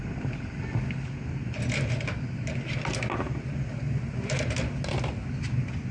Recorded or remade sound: recorded